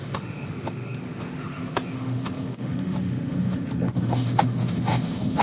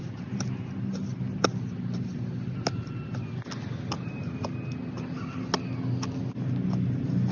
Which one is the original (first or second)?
second